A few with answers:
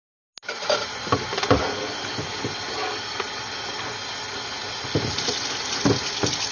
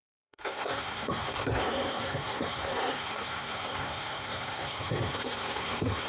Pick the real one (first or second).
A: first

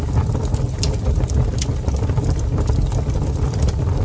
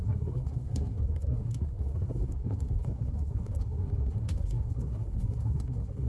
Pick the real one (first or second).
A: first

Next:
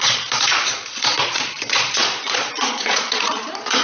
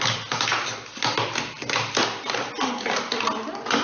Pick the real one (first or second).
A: second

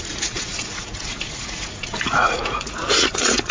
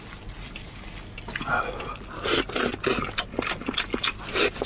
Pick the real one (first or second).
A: second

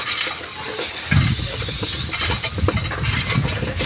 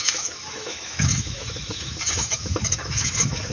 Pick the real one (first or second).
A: first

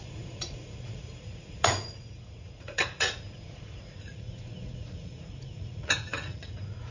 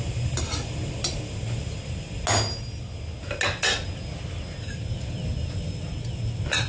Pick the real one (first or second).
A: second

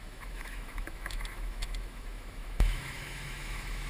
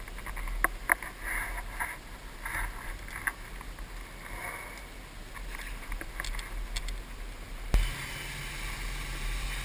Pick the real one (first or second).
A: second